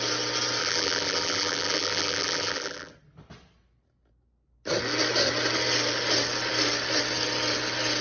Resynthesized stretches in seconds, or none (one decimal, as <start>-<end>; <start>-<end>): 0.6-2.9